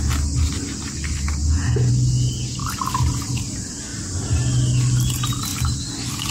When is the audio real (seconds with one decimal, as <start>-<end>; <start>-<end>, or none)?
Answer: 0.0-2.6; 3.1-6.3

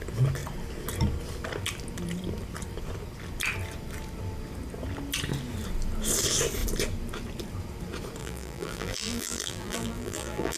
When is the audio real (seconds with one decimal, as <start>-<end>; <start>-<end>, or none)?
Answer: 0.0-8.2

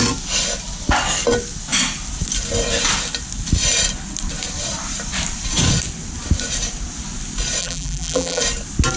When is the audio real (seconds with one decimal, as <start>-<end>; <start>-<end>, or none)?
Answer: 0.0-7.6; 8.4-9.0

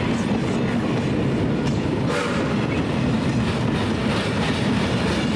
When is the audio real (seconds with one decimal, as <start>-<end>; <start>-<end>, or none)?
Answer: 0.0-5.4

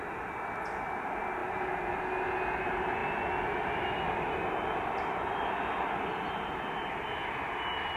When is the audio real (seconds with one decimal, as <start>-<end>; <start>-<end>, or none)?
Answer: 0.0-1.4; 2.0-8.0

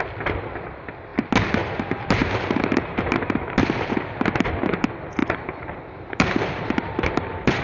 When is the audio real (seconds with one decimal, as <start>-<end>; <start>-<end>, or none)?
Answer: 0.0-2.2; 3.4-5.2

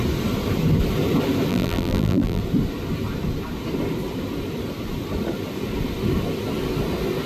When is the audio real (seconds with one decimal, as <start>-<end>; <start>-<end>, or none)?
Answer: 0.0-1.5; 2.4-7.3

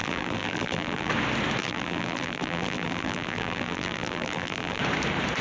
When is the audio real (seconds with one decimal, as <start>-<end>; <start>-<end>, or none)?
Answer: 1.1-1.6; 4.8-5.4